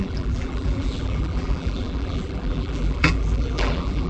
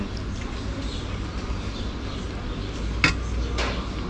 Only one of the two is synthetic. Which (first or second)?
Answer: first